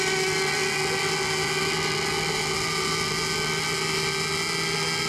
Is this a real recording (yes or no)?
yes